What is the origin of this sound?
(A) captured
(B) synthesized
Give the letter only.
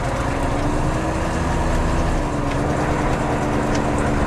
A